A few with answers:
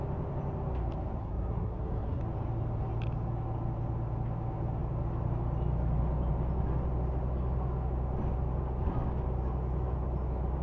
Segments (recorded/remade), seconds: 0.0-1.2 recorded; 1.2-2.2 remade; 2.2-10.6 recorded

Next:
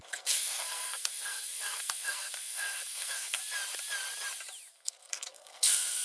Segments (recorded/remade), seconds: 0.0-3.4 remade; 3.4-4.7 recorded; 4.7-6.0 remade